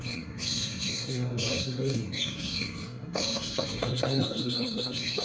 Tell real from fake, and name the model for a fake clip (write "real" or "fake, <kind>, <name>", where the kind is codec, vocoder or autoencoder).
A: fake, codec, SNAC